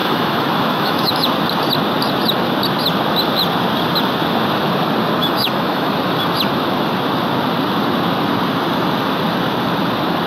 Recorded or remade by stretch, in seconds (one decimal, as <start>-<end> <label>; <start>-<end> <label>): 0.0-1.1 remade; 1.1-5.2 recorded; 5.2-5.9 remade; 5.9-10.3 recorded